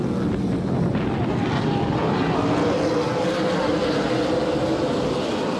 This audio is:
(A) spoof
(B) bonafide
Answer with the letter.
B